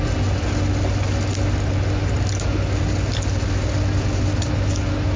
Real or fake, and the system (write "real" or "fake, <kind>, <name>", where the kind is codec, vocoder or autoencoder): real